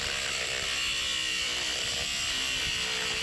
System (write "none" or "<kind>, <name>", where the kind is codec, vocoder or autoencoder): none